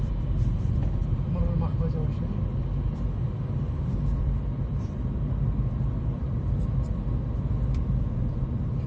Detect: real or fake fake